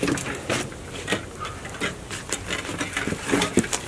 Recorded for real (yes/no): yes